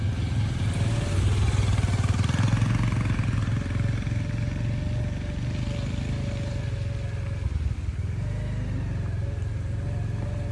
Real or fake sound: real